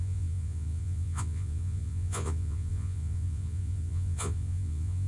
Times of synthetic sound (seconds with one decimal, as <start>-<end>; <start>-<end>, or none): 0.0-5.1